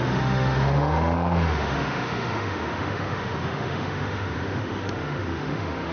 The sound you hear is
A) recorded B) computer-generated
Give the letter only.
B